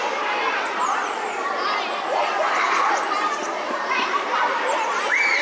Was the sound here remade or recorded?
remade